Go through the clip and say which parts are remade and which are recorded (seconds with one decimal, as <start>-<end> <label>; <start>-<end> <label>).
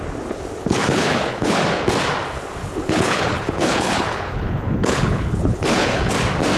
0.0-0.6 recorded; 0.6-1.6 remade; 1.6-2.6 recorded; 2.6-6.1 remade; 6.1-6.6 recorded